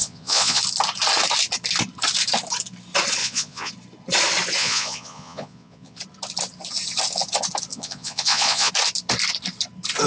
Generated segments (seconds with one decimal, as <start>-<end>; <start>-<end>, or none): 0.0-0.6; 3.2-3.7; 4.6-6.0; 7.7-8.7